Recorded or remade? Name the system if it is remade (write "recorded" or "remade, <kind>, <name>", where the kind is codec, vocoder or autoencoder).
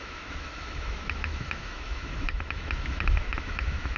remade, autoencoder, DAC-VAE